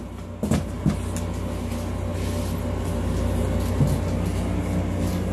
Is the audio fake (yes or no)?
no